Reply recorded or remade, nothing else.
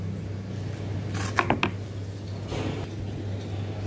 recorded